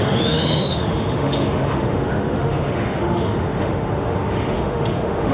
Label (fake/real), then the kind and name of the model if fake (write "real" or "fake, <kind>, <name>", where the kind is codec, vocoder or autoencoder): fake, autoencoder, DAC-VAE